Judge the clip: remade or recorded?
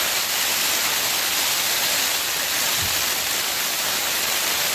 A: remade